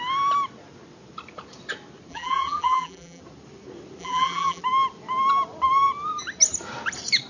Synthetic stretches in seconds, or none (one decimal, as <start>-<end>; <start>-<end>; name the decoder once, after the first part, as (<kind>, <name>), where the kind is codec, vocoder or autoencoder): 2.1-3.2 (vocoder, BigVGAN v2); 4.0-4.6